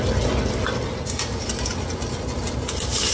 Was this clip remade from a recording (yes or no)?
no